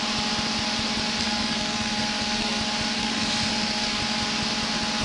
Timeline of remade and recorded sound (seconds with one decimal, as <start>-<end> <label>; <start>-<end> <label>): 0.0-1.2 recorded; 1.2-2.6 remade; 2.6-3.0 recorded; 3.0-4.0 remade; 4.0-5.0 recorded